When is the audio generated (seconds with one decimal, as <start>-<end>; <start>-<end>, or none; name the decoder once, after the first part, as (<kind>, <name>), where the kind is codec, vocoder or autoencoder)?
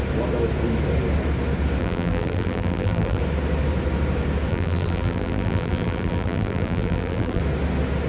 1.8-3.2 (vocoder, BigVGAN v2); 4.5-7.4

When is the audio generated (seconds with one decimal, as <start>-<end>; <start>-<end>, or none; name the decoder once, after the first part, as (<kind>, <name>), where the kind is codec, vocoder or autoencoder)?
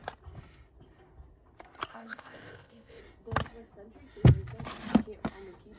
1.9-3.0 (codec, ZipCodec)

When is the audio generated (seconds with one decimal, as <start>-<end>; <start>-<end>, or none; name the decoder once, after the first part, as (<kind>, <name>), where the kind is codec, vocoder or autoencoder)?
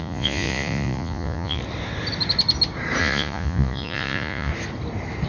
0.0-1.6 (vocoder, Vocos); 3.0-4.5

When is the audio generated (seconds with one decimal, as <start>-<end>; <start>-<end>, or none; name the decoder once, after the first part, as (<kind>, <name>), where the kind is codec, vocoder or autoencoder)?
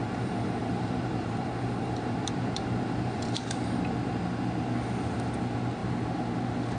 0.0-4.1 (vocoder, BigVGAN v2)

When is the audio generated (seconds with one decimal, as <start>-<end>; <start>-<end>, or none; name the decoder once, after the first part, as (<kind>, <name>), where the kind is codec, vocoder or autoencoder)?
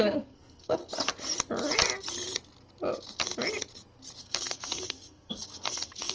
0.0-0.8 (codec, SNAC); 4.2-6.1